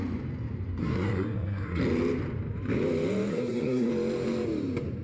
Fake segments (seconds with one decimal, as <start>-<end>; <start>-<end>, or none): 0.8-1.8; 3.3-3.9